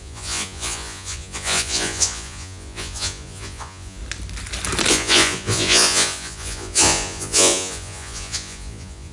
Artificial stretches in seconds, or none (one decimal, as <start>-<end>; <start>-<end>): 0.0-4.0; 4.9-9.1